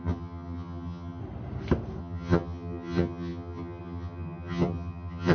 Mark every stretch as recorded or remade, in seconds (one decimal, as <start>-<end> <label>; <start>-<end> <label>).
0.0-1.2 remade; 1.2-2.0 recorded; 2.0-5.3 remade